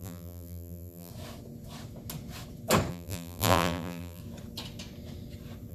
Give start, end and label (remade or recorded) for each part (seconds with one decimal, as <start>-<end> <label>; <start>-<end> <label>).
0.0-1.1 remade; 1.1-2.9 recorded; 2.9-4.2 remade; 4.2-5.7 recorded